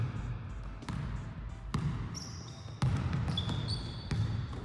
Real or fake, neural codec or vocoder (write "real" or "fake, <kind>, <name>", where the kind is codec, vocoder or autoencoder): real